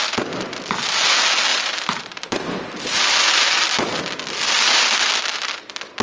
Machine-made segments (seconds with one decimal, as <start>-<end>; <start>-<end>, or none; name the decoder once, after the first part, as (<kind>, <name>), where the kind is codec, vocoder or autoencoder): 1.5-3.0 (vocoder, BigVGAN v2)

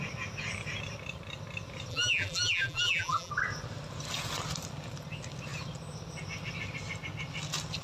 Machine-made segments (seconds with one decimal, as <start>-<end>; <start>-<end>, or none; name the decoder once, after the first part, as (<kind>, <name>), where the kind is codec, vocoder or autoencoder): 1.9-3.3 (vocoder, BigVGAN v2)

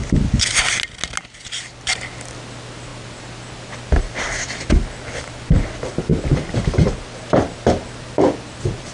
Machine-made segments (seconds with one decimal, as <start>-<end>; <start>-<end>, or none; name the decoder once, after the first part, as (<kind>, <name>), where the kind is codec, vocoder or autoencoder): none

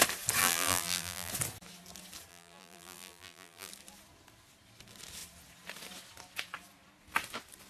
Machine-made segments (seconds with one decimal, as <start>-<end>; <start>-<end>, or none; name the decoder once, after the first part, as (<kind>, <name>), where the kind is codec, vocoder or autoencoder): 0.4-1.3 (vocoder, BigVGAN v2); 2.3-3.7

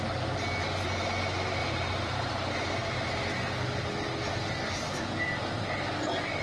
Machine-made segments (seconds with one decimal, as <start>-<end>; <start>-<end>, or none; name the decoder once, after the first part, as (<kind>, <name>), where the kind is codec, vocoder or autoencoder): 1.6-2.3 (vocoder, BigVGAN v2)

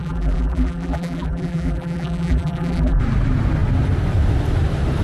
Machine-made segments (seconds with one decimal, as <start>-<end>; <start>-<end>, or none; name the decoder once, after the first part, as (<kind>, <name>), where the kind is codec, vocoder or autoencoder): 0.0-3.0 (vocoder, BigVGAN v2)